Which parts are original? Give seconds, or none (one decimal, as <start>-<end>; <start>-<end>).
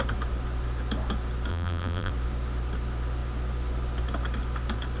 0.0-1.5; 2.1-5.0